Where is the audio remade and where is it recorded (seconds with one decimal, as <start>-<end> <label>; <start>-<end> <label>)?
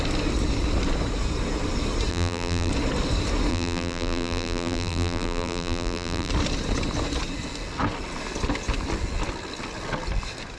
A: 0.0-2.1 recorded; 2.1-2.7 remade; 2.7-3.5 recorded; 3.5-6.3 remade; 6.3-10.6 recorded